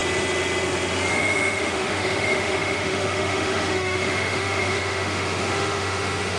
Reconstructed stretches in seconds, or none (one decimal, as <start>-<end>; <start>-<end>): 1.1-6.4